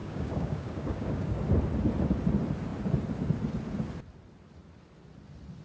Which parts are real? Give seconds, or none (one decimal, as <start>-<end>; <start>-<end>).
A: 1.4-5.6